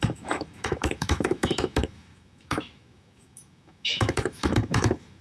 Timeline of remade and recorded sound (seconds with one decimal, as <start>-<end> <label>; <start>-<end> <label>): 0.0-5.2 remade